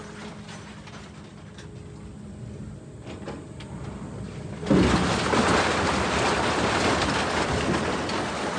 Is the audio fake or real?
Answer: real